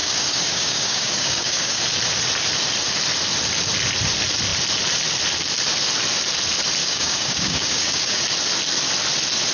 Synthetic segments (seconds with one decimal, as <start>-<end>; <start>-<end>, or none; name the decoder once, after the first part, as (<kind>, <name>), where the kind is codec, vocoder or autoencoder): 0.0-1.8 (codec, DAC); 6.8-8.2